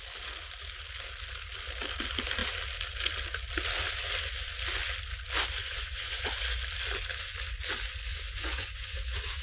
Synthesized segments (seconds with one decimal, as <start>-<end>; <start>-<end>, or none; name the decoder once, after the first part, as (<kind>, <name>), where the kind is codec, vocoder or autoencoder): 5.6-6.3 (vocoder, Vocos); 8.1-9.4